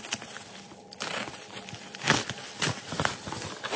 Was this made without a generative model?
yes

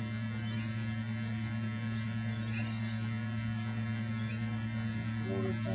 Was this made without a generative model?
yes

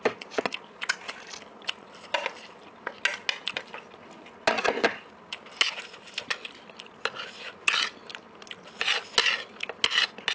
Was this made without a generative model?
yes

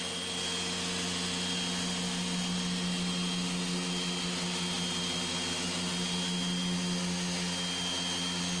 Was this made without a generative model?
yes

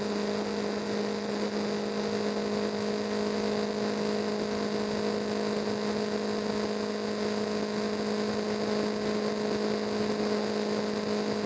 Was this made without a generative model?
yes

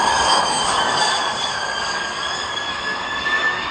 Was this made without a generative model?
no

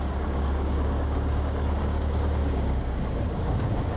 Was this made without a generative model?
no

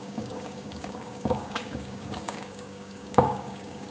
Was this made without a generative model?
no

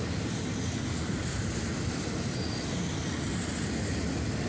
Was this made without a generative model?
yes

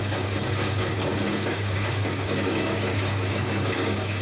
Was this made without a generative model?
no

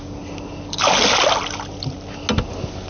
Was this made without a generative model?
yes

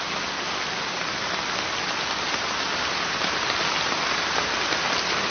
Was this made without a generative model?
yes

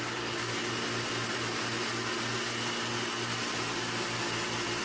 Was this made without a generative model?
yes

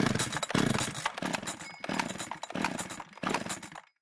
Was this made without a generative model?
yes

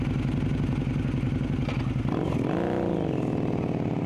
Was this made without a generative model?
yes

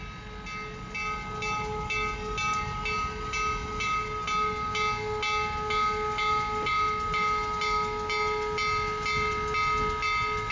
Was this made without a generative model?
yes